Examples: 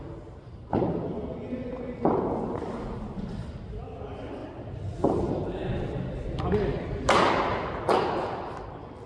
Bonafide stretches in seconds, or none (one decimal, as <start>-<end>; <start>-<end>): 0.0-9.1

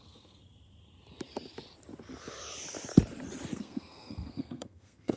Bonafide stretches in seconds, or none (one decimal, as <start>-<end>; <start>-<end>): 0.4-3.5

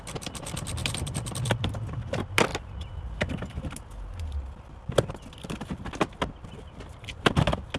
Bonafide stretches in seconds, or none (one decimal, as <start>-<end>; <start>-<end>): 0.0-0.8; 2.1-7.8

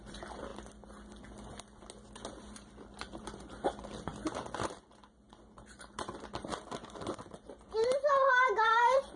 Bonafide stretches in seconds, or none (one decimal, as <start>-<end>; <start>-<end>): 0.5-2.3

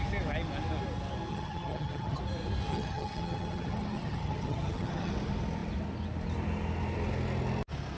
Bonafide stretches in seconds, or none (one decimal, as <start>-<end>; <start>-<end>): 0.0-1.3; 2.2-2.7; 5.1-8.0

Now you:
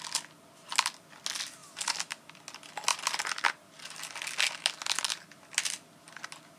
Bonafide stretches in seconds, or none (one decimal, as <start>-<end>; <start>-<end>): 0.0-1.6; 2.2-6.6

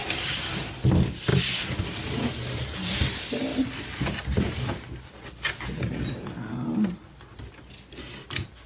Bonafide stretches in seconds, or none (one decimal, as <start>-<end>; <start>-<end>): 0.0-1.3; 1.8-8.7